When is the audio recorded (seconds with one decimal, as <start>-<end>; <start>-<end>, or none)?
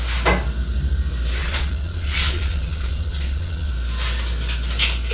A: 0.0-1.4; 3.7-5.1